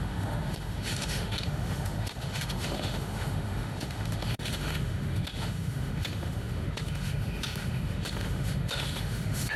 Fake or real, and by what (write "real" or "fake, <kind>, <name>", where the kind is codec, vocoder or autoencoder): fake, autoencoder, DAC-VAE